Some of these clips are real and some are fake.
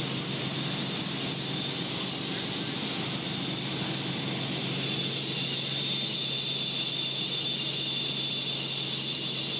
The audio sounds real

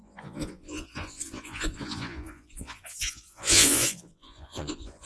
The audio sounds fake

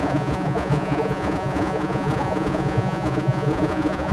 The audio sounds fake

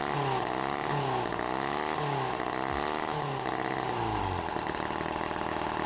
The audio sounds real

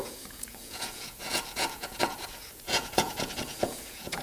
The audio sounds fake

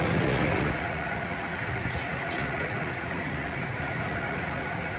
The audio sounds fake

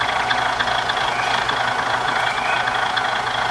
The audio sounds fake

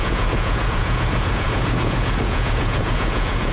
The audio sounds fake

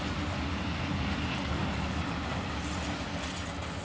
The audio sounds real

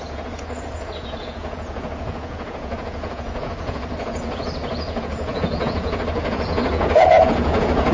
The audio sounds fake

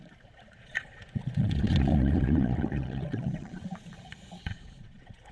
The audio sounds fake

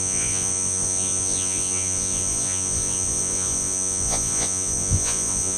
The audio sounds fake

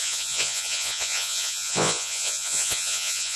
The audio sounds fake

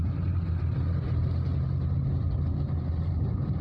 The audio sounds real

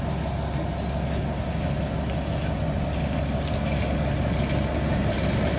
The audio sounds real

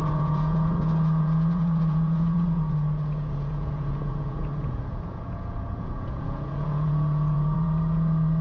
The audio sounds fake